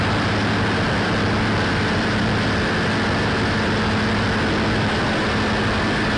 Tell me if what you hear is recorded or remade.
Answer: recorded